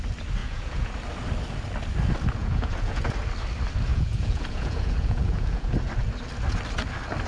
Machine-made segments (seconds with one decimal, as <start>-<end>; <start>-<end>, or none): 0.4-0.9; 2.4-3.0; 3.9-5.7